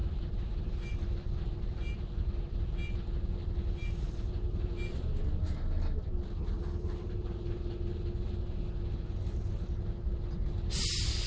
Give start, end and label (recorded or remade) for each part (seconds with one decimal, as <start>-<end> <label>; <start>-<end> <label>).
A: 0.0-2.0 remade; 2.0-11.3 recorded